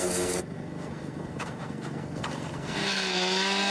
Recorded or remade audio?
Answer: remade